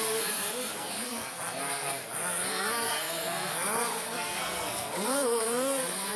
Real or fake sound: fake